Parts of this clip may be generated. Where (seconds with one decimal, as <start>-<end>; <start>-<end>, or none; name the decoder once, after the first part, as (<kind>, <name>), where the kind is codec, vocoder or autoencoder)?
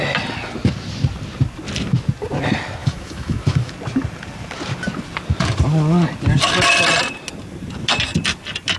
2.8-3.7 (autoencoder, DAC-VAE)